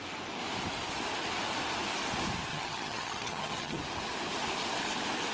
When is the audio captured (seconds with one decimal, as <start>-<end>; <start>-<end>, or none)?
0.0-2.5; 3.8-5.3

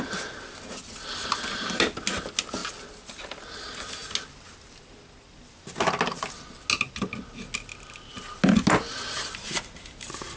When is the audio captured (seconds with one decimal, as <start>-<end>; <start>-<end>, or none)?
0.0-10.4